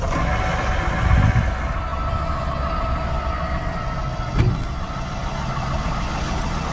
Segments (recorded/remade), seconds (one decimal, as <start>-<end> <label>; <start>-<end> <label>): 0.0-6.7 recorded